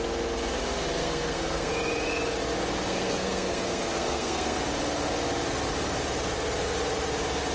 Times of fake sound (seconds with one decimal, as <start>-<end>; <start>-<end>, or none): 1.0-1.7; 2.9-4.6